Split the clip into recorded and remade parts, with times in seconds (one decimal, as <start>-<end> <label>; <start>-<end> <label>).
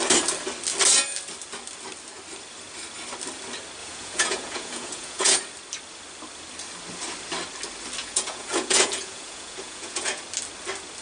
0.0-3.8 recorded; 3.8-5.4 remade; 5.4-8.0 recorded; 8.0-10.2 remade; 10.2-11.0 recorded